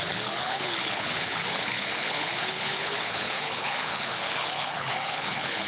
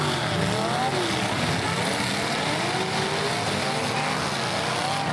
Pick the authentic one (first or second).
second